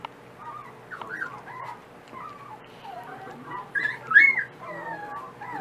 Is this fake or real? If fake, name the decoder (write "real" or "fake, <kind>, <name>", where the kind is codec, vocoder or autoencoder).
real